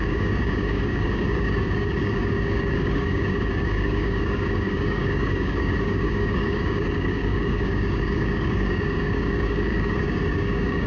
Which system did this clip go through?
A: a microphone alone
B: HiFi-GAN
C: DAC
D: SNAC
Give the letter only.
C